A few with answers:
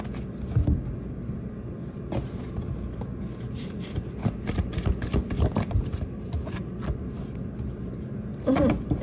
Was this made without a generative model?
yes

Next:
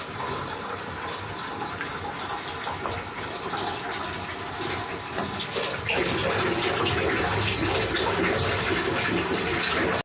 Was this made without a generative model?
yes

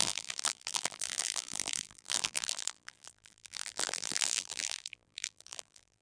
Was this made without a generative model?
no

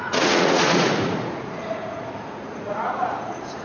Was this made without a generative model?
no